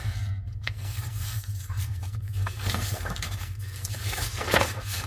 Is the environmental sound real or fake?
fake